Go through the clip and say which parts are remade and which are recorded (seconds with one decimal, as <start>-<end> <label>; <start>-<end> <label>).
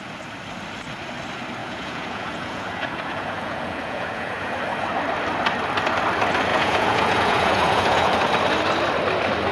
0.0-1.6 recorded; 1.6-4.5 remade; 4.5-6.5 recorded; 6.5-8.1 remade; 8.1-9.5 recorded